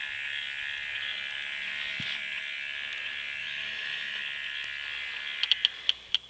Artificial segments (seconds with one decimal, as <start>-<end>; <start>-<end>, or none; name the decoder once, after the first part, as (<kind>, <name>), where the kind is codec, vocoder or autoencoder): 3.4-4.2 (autoencoder, DAC-VAE)